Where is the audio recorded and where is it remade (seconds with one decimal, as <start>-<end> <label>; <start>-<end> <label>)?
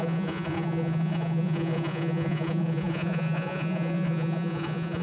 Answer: 0.0-5.0 remade